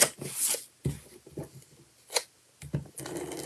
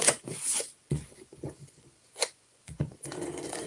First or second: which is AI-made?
second